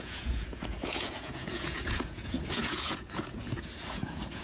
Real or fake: fake